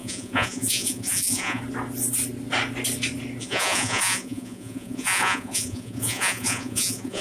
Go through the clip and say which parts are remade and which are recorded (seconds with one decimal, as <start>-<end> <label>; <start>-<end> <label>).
0.0-1.6 remade; 1.6-3.4 recorded; 3.4-7.2 remade